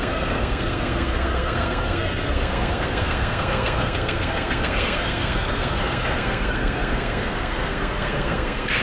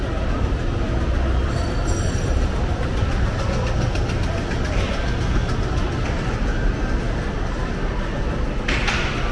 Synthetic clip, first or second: first